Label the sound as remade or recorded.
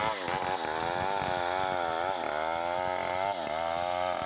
recorded